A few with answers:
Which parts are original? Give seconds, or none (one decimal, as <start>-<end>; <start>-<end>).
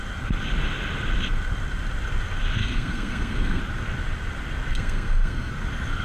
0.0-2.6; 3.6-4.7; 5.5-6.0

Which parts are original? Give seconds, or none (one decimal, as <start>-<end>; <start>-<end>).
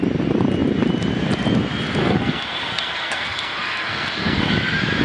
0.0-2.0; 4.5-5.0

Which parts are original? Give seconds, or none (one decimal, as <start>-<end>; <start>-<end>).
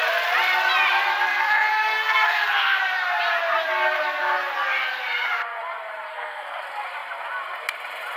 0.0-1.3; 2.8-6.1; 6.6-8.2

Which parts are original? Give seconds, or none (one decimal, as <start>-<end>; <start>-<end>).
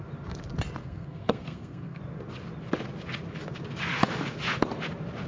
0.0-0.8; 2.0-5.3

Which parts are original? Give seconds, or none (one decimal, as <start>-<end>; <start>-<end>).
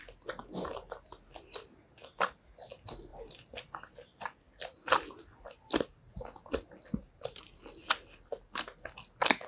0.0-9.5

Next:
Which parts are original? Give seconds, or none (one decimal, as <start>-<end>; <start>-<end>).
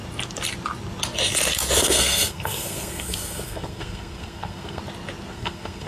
0.0-1.8; 4.8-5.3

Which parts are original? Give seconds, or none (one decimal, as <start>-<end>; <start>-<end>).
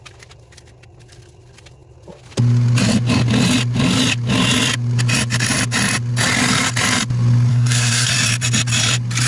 0.0-7.5; 8.1-9.3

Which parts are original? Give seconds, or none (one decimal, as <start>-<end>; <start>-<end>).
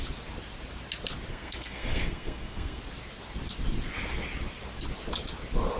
0.0-1.3; 2.8-5.8